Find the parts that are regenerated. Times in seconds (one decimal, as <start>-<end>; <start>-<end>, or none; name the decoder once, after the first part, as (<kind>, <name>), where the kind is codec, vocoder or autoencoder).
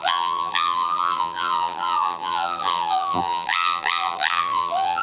0.0-5.0 (vocoder, BigVGAN v2)